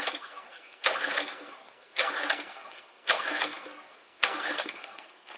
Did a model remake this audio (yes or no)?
yes